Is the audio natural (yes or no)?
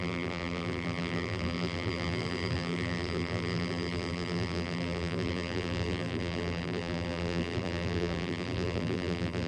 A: no